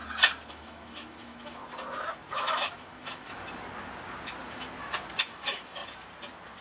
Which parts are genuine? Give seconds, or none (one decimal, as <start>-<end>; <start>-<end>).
0.0-0.5; 1.6-2.3; 3.3-5.2; 5.8-6.6